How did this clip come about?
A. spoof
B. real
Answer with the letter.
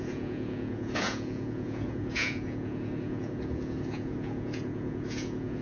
A